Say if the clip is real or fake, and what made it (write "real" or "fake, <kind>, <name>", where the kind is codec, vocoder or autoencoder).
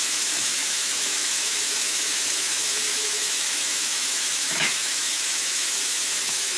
fake, autoencoder, DAC-VAE